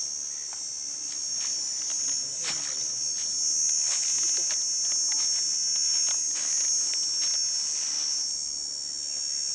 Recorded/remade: recorded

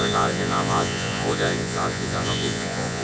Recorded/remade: remade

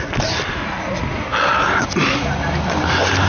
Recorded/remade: recorded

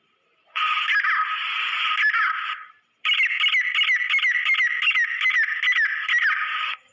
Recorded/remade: recorded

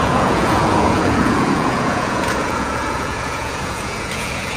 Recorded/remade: remade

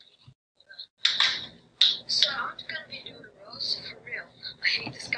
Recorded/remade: recorded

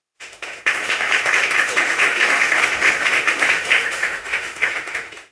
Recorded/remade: remade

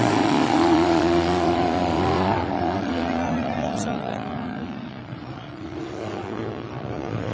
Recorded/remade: remade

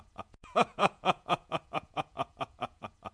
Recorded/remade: remade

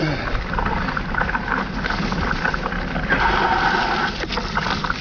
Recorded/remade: recorded